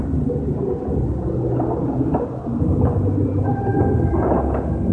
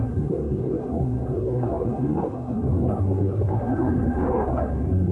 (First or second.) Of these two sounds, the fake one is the second